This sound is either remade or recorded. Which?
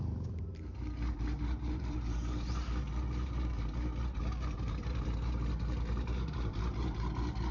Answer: remade